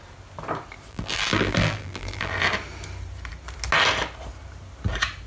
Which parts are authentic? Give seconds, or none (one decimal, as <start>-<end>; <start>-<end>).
0.0-0.9; 2.3-5.3